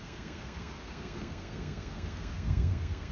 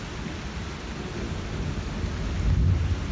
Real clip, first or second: second